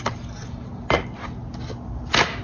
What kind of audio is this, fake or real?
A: real